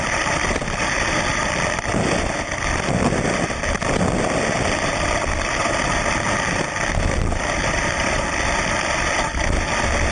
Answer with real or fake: real